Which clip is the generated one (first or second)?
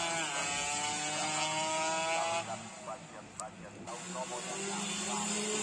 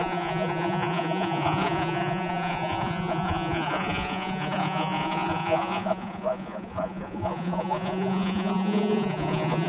second